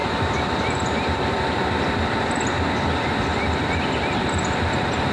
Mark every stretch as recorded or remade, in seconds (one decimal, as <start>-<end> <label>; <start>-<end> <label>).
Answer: 0.0-0.5 remade; 0.5-5.1 recorded